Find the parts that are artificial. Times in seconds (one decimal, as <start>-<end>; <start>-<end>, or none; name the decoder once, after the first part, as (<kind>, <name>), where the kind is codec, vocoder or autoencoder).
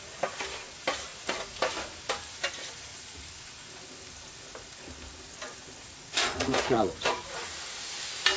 1.1-1.6 (vocoder, Vocos); 5.8-7.8